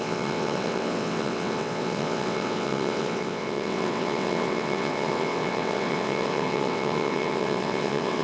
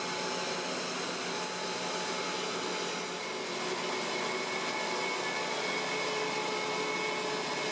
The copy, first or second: first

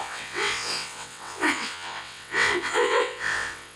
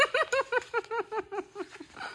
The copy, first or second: first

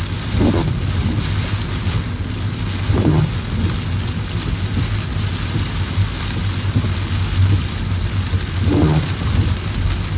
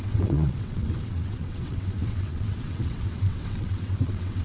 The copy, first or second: second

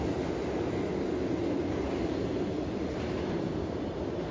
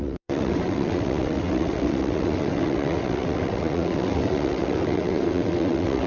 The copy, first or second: second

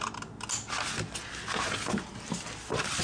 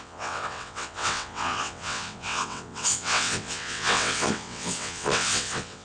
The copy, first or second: second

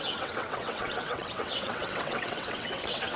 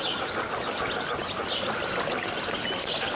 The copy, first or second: first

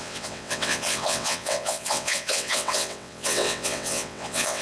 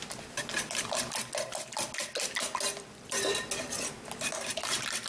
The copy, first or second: first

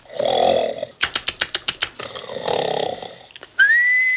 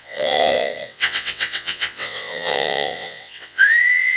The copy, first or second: second